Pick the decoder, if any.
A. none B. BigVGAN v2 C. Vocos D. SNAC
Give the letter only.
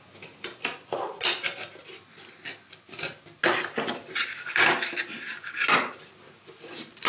A